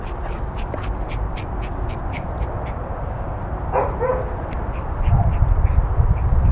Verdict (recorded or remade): recorded